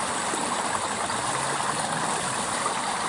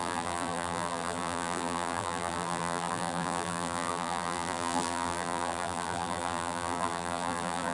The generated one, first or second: second